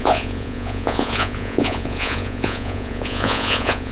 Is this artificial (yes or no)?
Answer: yes